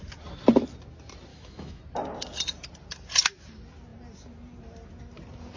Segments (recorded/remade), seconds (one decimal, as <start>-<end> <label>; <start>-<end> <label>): 0.0-1.3 recorded; 1.3-1.8 remade; 1.8-5.6 recorded